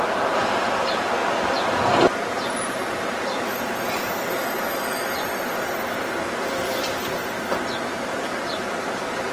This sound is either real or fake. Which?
real